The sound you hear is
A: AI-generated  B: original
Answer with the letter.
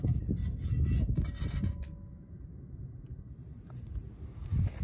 B